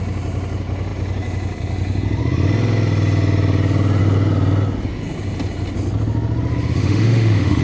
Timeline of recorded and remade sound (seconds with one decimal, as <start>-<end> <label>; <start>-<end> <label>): 0.0-6.8 recorded; 6.8-7.6 remade